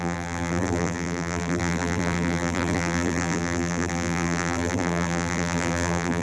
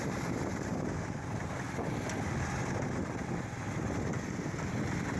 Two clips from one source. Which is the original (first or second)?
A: second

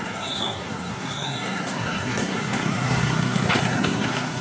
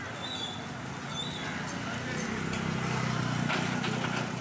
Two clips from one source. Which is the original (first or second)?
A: second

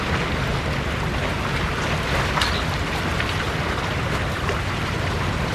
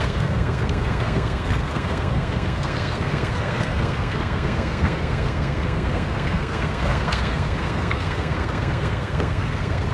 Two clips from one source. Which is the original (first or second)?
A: first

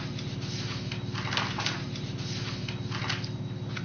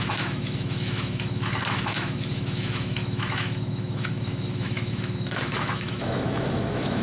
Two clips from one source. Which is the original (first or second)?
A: first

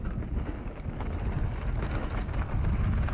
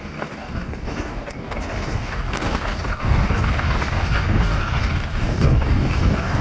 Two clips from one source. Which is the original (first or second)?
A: first